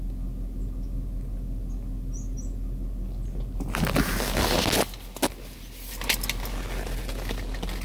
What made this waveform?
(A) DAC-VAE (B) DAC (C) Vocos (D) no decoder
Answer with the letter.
D